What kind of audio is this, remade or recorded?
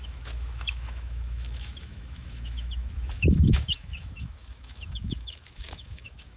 remade